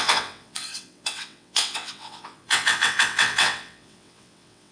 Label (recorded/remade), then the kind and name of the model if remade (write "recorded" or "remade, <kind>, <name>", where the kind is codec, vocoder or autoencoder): remade, vocoder, WaveNeXt